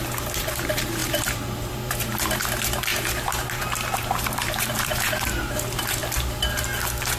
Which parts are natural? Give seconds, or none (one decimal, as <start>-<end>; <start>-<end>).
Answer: 6.0-7.2